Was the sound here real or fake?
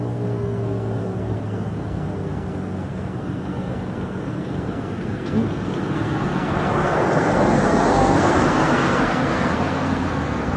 fake